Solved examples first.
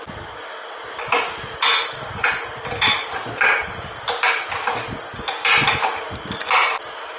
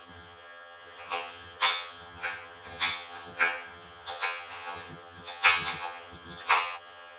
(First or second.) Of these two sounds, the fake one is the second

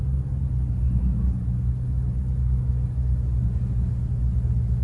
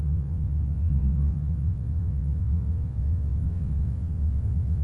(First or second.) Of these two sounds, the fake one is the second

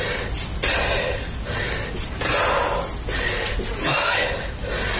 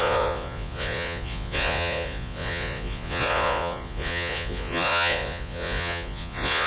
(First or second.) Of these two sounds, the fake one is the second